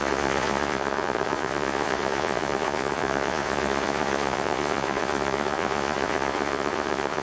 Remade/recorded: remade